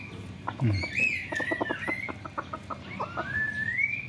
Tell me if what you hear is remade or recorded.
recorded